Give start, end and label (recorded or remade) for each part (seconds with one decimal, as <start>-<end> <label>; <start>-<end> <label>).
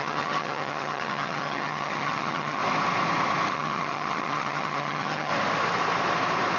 0.0-2.6 remade; 2.6-3.5 recorded; 3.5-5.3 remade; 5.3-6.6 recorded